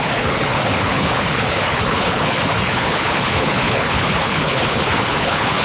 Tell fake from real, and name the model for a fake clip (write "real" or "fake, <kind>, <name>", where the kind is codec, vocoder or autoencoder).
fake, codec, HILCodec